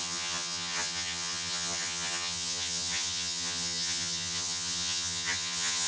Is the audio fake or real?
fake